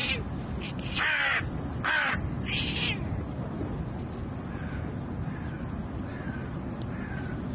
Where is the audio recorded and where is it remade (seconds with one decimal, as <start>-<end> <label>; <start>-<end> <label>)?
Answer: 0.0-7.5 recorded